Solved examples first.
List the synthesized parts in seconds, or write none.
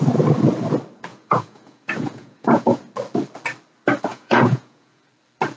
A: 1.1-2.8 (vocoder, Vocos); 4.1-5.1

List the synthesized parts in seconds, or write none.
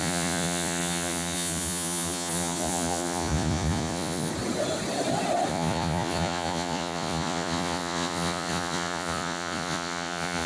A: 0.0-4.3 (vocoder, Vocos); 5.5-10.5